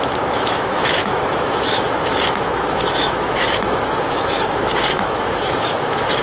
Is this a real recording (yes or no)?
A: no